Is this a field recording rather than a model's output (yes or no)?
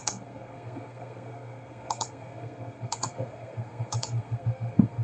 no